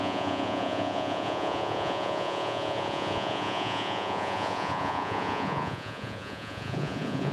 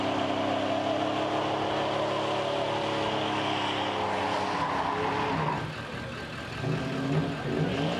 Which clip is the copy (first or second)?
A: first